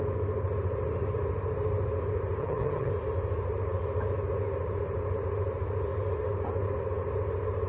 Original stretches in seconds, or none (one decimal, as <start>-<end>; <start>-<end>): 0.0-2.4; 2.9-7.7